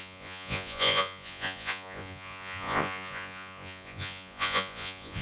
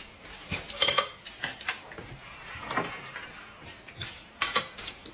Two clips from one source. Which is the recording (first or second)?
second